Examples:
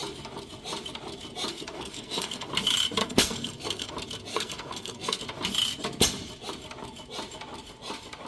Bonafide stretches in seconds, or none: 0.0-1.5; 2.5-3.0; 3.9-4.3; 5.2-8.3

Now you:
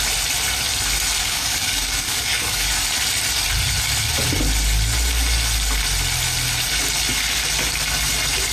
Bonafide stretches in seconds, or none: 0.0-1.2; 2.7-8.5

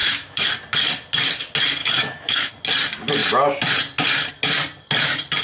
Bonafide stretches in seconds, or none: 0.5-1.8; 2.5-5.4

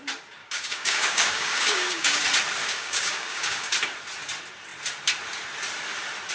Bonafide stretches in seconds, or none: 0.0-0.4; 2.2-2.6; 3.7-6.3

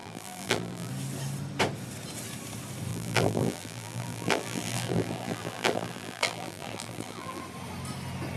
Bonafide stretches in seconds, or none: 0.9-2.9; 7.4-8.4

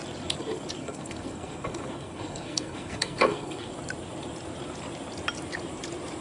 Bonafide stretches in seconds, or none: 0.0-0.8; 3.7-6.2

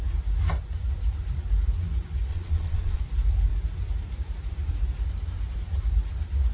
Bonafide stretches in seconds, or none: 0.0-2.3; 3.0-6.5

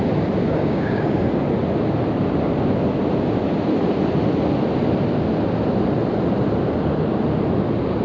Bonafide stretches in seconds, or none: 0.0-0.5; 1.3-8.0